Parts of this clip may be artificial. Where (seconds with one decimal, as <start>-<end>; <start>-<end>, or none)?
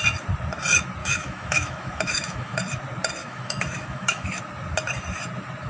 1.0-2.6; 3.2-4.4